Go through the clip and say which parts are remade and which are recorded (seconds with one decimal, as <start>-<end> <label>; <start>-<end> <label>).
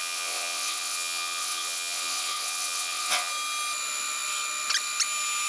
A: 0.0-3.3 remade; 3.3-5.5 recorded